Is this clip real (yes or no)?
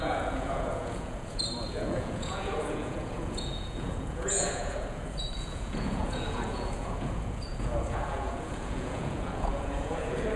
no